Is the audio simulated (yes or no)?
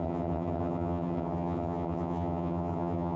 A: yes